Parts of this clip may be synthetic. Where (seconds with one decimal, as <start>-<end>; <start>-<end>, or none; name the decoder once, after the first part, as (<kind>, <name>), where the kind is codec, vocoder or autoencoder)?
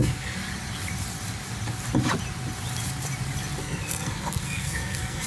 0.0-0.4 (codec, SNAC); 3.6-5.3